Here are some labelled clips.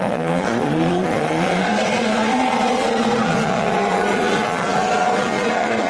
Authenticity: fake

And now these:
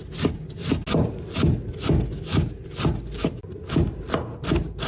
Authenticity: real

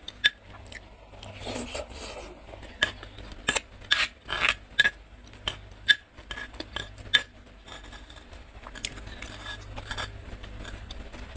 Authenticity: real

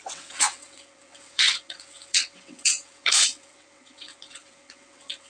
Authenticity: fake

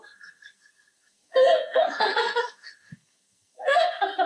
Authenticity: fake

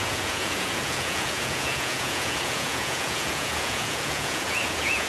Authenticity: fake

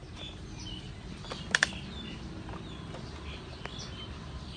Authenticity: real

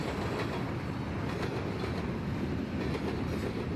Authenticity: real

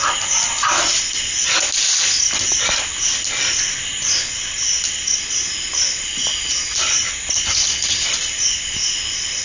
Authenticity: real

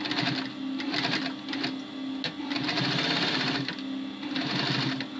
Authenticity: real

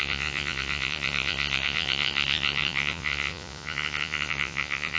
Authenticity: fake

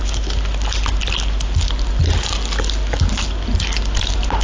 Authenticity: real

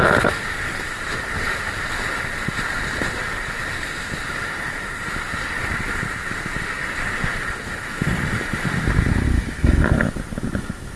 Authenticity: real